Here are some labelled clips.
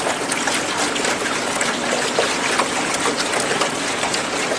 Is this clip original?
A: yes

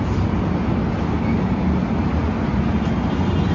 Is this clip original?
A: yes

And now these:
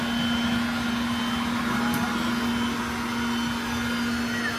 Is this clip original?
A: yes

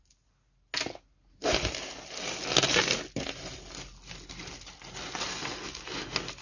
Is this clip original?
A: yes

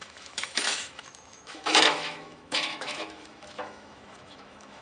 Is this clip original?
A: no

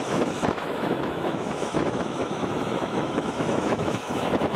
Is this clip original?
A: no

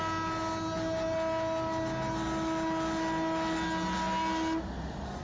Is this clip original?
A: yes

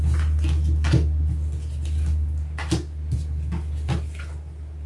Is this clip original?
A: yes